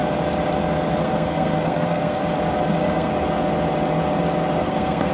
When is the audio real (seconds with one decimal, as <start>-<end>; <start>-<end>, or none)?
0.0-1.0; 2.2-2.7; 3.1-4.6